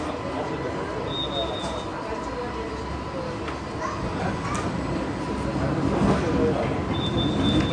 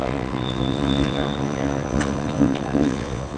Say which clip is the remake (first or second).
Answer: second